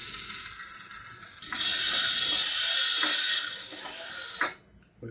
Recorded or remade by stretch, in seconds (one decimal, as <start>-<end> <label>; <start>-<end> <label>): 0.0-3.1 recorded; 3.1-3.8 remade; 3.8-5.1 recorded